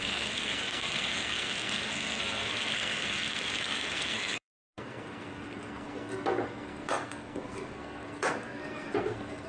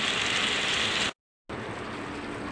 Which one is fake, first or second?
first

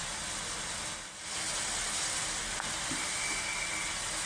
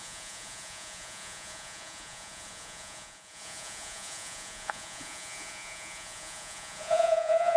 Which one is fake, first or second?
second